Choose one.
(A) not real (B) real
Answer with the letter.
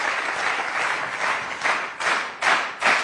B